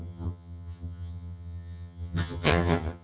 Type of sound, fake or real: fake